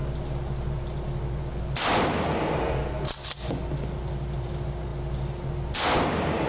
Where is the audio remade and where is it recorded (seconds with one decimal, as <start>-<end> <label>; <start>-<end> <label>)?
0.0-6.5 recorded